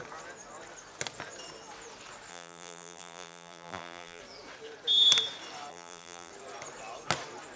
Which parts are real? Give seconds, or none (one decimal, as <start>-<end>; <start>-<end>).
0.0-2.3; 4.2-5.7; 6.3-7.6